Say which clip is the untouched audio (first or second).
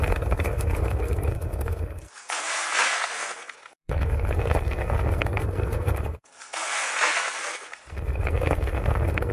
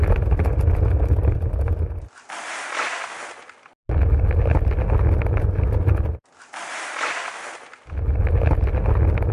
second